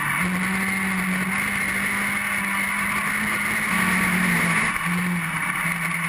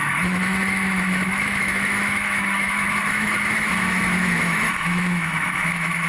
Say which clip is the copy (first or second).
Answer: second